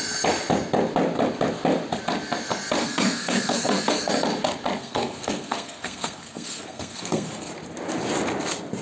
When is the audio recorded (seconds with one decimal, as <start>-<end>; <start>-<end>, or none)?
0.0-2.8; 4.1-4.8; 7.5-8.8